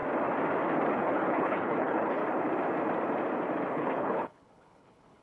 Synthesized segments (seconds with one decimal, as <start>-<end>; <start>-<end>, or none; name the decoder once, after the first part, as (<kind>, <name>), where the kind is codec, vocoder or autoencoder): 0.9-2.2 (codec, HILCodec); 3.7-5.2